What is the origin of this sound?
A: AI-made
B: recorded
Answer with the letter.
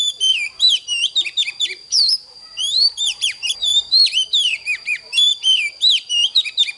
A